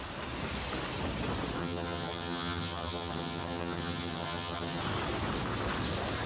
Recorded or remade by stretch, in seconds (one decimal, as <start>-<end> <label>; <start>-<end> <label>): 0.0-1.6 recorded; 1.6-4.8 remade; 4.8-6.3 recorded